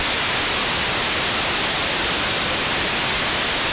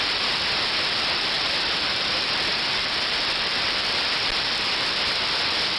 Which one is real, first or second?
first